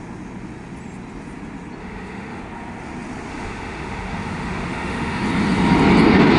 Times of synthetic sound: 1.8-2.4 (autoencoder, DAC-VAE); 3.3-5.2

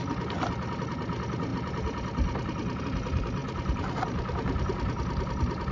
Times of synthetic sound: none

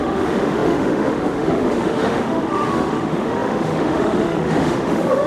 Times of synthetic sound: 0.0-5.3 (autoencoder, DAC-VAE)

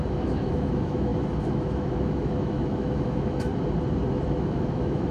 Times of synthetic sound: 0.0-3.5 (autoencoder, DAC-VAE); 4.1-5.1

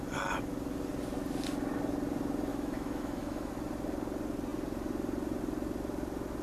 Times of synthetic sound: 2.5-3.5 (autoencoder, DAC-VAE)